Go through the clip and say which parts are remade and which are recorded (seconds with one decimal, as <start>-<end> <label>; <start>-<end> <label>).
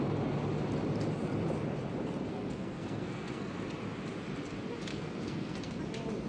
0.0-2.3 recorded; 2.3-3.5 remade; 3.5-4.9 recorded; 4.9-5.8 remade; 5.8-6.3 recorded